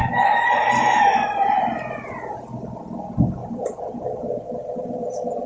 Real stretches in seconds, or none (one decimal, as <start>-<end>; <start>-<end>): 0.0-3.4